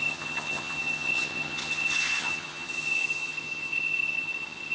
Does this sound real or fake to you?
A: fake